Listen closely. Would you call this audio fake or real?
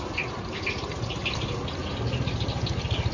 real